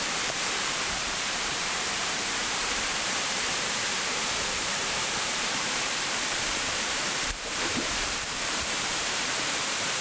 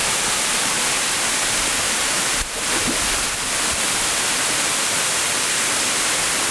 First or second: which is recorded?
second